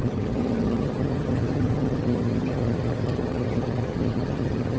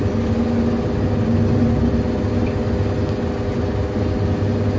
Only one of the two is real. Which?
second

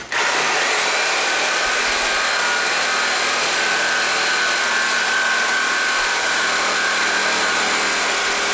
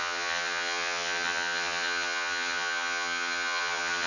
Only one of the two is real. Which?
first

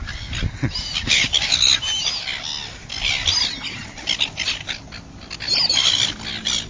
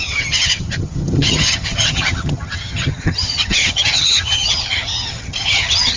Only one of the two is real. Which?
first